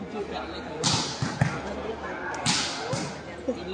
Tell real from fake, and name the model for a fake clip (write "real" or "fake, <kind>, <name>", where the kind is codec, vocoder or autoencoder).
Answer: real